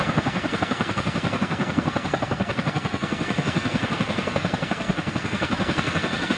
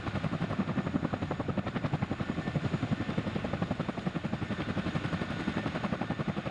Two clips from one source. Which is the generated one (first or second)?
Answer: first